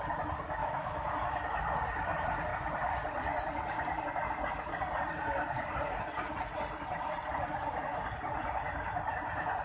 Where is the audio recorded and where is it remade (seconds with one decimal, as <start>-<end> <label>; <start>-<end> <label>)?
0.0-0.6 recorded; 0.6-1.2 remade; 1.2-9.6 recorded